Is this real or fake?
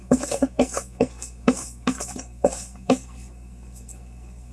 fake